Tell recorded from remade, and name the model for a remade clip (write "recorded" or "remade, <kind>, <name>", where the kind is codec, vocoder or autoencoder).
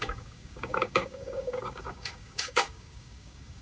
remade, codec, DAC